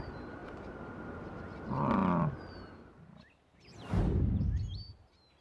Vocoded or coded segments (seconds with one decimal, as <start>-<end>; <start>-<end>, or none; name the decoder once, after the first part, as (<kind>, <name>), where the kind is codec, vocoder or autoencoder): none